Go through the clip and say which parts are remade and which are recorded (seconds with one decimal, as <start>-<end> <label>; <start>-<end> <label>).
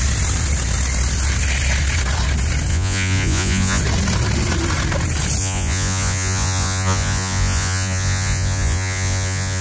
0.0-2.7 recorded; 2.7-3.8 remade; 3.8-5.4 recorded; 5.4-9.6 remade